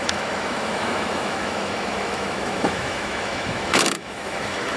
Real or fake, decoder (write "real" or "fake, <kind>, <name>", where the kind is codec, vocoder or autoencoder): fake, autoencoder, DAC-VAE